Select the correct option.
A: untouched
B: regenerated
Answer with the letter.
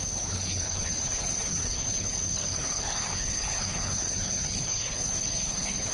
B